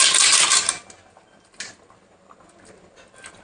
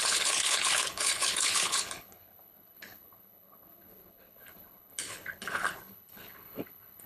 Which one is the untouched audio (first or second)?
first